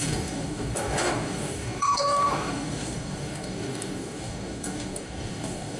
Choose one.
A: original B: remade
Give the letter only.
B